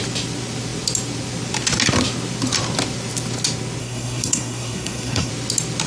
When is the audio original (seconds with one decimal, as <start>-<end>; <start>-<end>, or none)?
0.0-3.8; 5.3-5.9